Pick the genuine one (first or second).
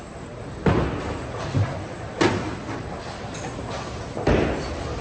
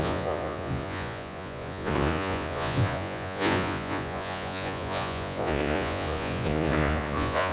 first